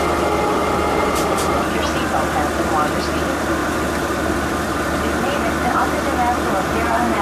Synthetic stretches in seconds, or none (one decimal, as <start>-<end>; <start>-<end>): 0.6-1.7; 3.6-5.7